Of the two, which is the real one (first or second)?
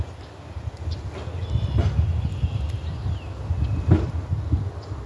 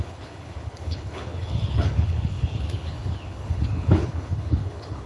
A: first